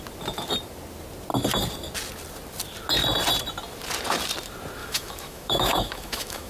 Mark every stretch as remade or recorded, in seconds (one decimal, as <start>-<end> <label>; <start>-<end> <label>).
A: 0.0-4.8 recorded; 4.8-6.5 remade